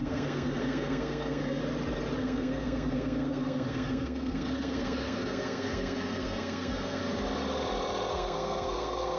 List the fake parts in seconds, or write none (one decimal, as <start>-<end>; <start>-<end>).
0.0-1.6; 2.2-7.0; 8.1-9.2

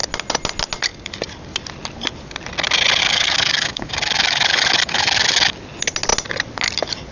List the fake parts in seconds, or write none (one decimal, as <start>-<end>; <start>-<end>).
3.0-5.6